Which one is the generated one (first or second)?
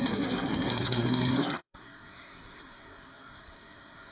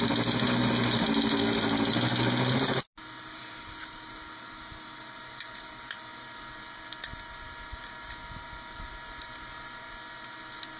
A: first